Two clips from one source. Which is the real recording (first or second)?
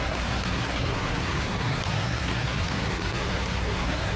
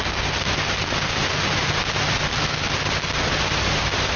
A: second